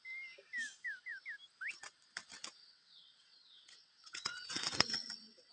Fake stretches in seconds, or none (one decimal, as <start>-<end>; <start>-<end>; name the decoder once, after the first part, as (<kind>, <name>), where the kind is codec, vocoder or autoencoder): 2.6-5.5 (vocoder, WaveNeXt)